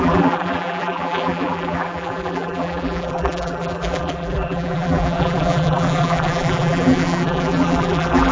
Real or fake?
fake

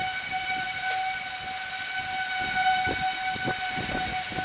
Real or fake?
real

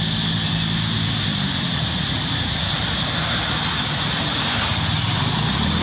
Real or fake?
real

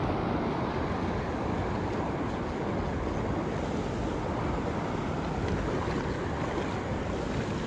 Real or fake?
real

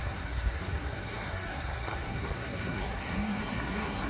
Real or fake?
fake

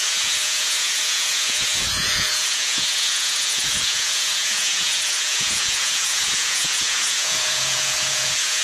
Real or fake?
fake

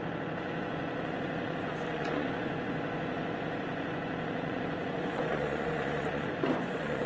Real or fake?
fake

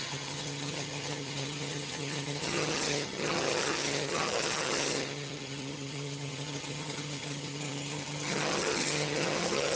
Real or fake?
fake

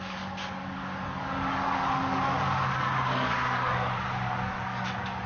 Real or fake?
fake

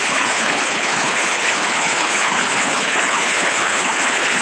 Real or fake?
fake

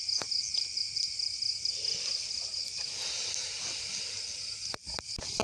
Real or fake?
real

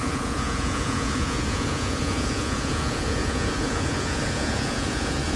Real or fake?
fake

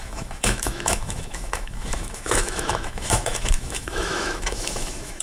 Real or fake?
fake